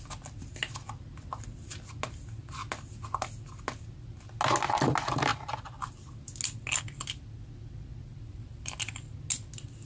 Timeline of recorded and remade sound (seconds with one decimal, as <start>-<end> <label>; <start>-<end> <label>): 0.0-9.9 recorded